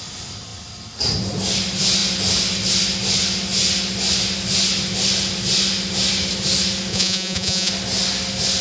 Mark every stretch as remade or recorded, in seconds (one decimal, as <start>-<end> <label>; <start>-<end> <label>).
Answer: 0.0-6.9 recorded; 6.9-7.7 remade; 7.7-8.6 recorded